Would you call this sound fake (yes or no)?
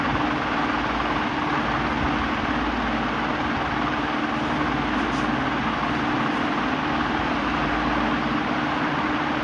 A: no